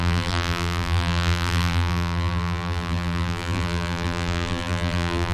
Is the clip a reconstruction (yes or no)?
yes